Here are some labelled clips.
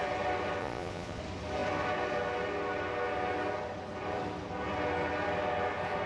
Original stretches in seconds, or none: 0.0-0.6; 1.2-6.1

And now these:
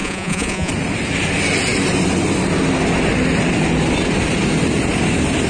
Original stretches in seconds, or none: 0.7-5.5

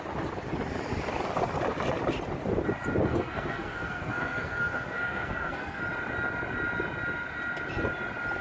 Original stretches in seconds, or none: 0.0-3.1; 5.8-8.4